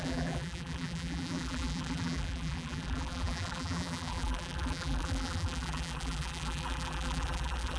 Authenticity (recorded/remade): remade